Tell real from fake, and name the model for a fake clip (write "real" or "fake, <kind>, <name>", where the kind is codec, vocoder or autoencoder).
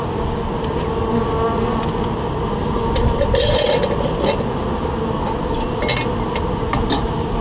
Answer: real